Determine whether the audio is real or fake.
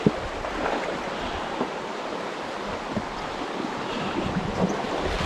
fake